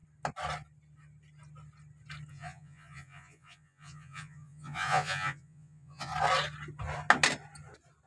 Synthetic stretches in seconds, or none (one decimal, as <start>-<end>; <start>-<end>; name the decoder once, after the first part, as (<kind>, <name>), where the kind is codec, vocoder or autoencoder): 2.3-6.1 (vocoder, Vocos)